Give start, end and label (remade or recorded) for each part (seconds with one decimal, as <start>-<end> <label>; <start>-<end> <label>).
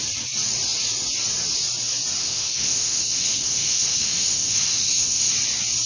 0.0-2.2 recorded; 2.2-5.3 remade; 5.3-5.9 recorded